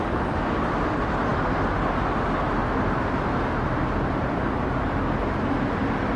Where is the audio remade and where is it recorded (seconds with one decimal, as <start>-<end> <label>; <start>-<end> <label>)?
0.0-6.2 recorded